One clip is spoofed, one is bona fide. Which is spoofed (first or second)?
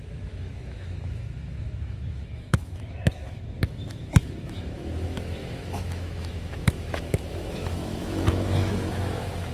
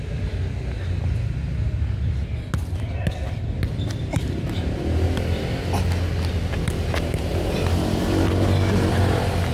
first